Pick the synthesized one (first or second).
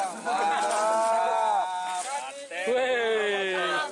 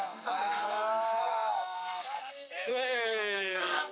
second